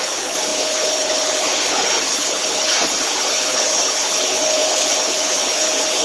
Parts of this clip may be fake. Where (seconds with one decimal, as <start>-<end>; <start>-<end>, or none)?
0.0-6.0